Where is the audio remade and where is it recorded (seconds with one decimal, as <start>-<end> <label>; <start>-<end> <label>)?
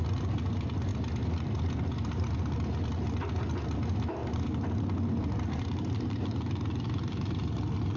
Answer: 0.0-0.9 recorded; 0.9-2.4 remade; 2.4-4.2 recorded; 4.2-7.6 remade; 7.6-8.0 recorded